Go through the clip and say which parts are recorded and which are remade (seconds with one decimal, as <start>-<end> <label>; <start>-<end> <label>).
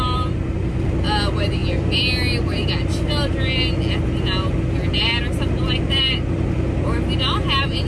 0.0-7.9 recorded